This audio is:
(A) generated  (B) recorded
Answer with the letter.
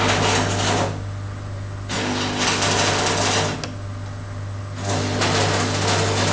B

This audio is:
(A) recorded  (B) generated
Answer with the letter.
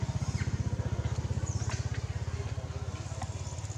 A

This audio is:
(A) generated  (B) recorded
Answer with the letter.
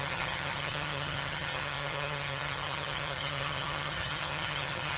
A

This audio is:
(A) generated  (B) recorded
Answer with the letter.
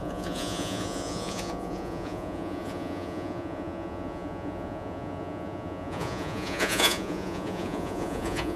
A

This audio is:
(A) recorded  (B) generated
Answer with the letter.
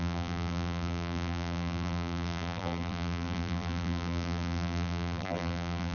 B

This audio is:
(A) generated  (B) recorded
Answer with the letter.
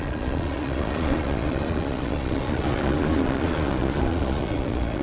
A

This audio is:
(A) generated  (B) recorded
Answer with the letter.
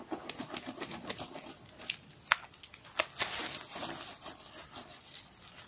B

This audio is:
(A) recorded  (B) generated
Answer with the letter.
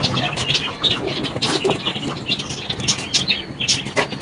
A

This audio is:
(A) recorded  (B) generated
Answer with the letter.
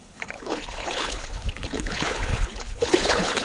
B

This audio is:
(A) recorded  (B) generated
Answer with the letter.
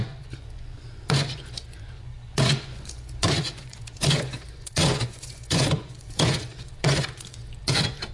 B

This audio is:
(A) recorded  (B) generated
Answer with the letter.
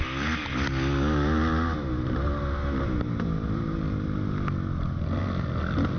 A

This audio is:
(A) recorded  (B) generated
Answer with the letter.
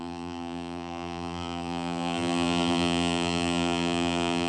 B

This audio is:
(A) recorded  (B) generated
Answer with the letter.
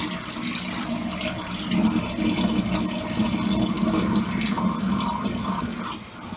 A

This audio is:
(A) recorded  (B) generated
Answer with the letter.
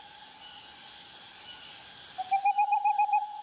A